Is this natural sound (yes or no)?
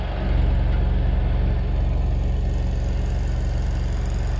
yes